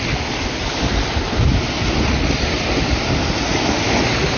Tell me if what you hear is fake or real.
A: real